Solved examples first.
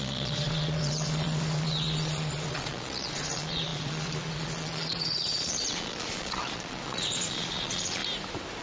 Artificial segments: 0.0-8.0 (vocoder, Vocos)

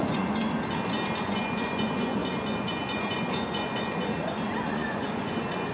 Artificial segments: 0.0-0.4 (vocoder, Vocos); 1.2-5.7

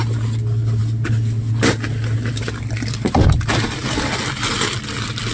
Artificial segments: none

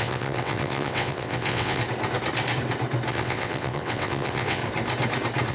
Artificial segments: 0.0-1.8 (vocoder, WaveNeXt); 3.1-4.6

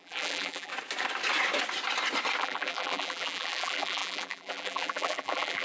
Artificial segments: 0.0-0.7 (vocoder, BigVGAN v2); 2.4-5.6

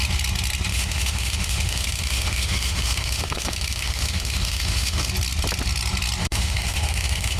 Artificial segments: 0.7-5.1 (autoencoder, DAC-VAE); 6.2-7.4

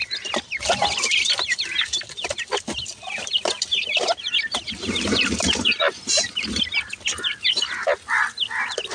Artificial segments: none